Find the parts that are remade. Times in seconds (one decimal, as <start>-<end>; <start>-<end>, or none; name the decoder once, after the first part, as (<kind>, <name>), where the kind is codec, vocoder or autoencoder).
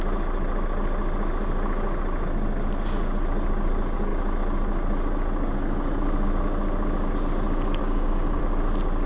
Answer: 7.8-8.4 (codec, DAC)